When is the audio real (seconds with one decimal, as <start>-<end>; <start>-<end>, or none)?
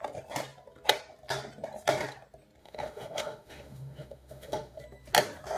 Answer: 0.0-2.6; 4.8-5.6